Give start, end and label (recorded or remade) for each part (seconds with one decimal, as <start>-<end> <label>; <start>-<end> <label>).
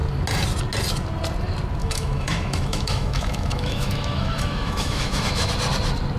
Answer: 0.0-1.8 recorded; 1.8-5.5 remade; 5.5-6.2 recorded